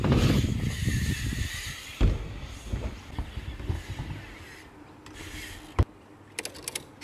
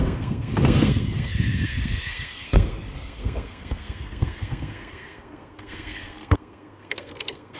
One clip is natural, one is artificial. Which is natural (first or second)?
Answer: first